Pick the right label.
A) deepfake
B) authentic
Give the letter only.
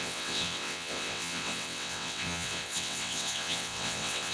A